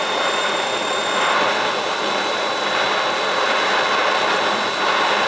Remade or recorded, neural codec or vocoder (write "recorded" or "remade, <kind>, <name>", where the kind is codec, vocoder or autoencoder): remade, vocoder, BigVGAN v2